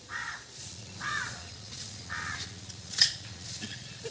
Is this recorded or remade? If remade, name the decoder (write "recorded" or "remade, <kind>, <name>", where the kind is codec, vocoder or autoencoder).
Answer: remade, vocoder, Vocos